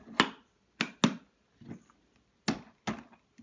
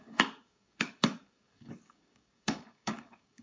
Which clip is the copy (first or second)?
second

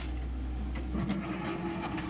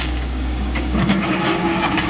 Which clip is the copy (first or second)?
second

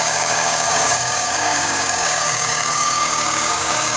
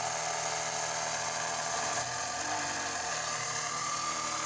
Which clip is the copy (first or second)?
first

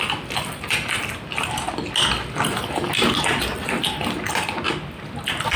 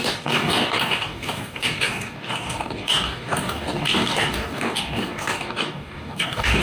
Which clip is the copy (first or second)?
second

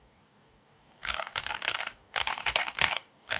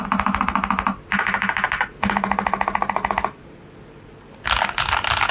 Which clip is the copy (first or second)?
first